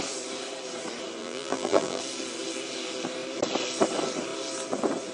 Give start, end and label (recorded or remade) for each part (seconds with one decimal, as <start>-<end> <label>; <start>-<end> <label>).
0.0-1.2 recorded; 1.2-2.0 remade; 2.0-5.1 recorded